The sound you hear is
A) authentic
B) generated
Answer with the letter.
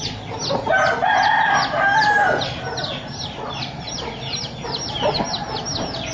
A